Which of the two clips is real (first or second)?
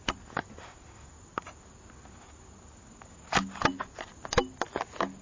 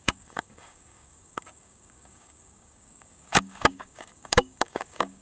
first